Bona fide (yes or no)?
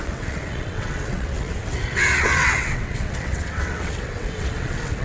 no